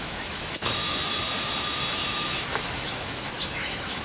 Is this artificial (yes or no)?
yes